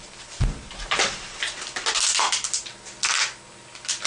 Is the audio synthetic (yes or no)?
no